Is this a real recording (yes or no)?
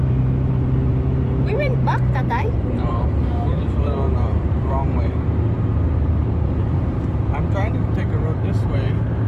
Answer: no